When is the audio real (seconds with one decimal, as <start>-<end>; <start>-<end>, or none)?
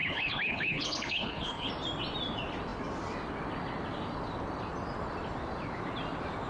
1.7-6.5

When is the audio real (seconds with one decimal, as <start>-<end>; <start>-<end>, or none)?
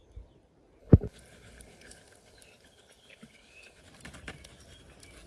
0.0-0.8; 3.8-5.3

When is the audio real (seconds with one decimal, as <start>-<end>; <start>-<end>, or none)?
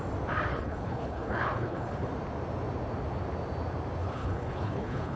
0.0-0.5; 2.1-4.0